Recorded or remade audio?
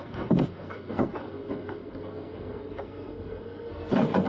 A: remade